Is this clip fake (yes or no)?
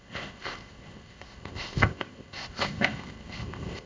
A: yes